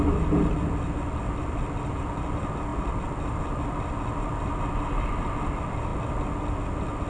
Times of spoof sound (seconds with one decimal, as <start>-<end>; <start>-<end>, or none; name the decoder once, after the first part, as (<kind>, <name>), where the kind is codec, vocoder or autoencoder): none